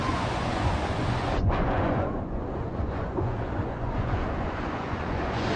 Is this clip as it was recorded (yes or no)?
no